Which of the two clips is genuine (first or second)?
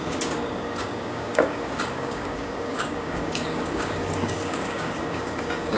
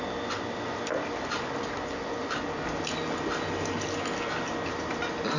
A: second